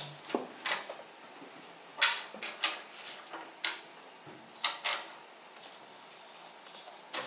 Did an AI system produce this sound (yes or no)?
no